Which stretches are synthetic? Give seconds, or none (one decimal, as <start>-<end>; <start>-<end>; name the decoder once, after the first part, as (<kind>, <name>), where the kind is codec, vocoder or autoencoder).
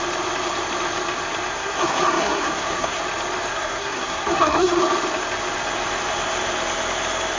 1.5-3.0 (codec, SNAC); 3.5-4.8